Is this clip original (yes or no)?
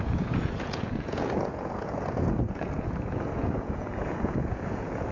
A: no